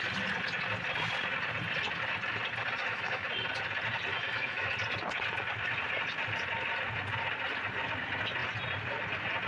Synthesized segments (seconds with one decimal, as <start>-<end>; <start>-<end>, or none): 2.8-3.3; 4.1-4.7